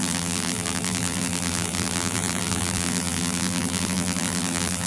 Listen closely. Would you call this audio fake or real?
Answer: fake